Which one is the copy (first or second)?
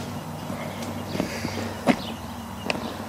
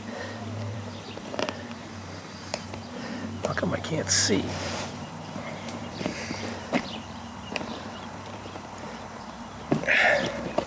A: second